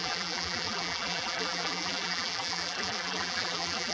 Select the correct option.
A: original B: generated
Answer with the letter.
B